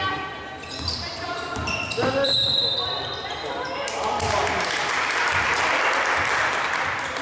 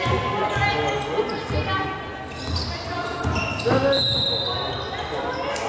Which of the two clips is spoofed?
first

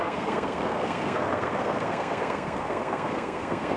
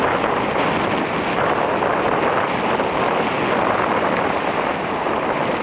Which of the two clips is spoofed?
first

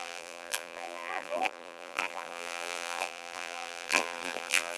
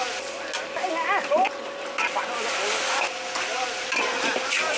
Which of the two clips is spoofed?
first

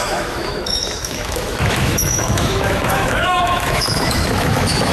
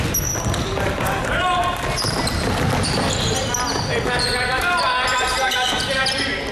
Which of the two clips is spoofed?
first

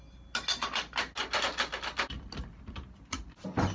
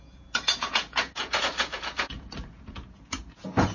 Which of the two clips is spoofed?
second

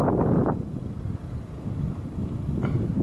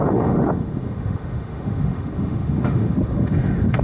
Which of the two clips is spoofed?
second